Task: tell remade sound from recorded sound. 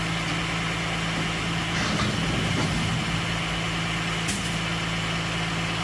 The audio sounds recorded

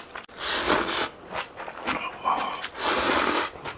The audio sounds recorded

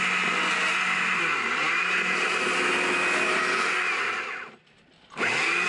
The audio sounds recorded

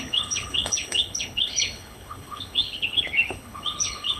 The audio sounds remade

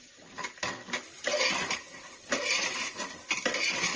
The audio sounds recorded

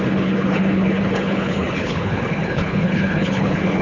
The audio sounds remade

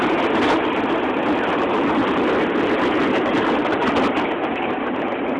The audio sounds recorded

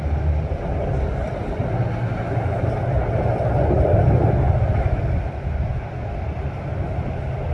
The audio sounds recorded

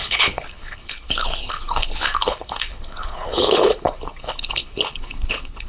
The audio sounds remade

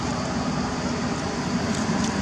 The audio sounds recorded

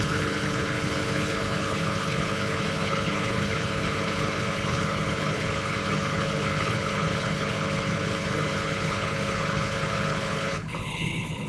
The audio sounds remade